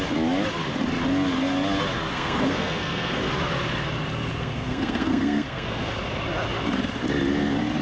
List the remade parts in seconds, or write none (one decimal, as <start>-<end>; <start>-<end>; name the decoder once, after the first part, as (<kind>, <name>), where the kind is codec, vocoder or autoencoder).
2.1-3.2 (codec, SNAC); 4.3-5.9